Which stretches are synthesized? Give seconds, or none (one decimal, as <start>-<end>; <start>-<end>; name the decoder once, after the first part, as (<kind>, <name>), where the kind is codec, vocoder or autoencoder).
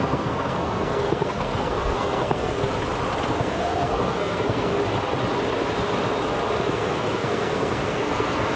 0.0-2.7 (codec, SNAC); 3.3-4.7; 6.7-8.6